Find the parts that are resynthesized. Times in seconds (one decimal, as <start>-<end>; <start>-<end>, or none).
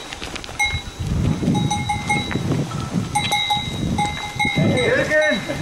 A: none